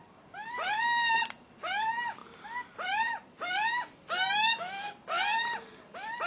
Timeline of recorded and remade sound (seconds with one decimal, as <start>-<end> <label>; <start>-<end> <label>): 0.0-6.3 recorded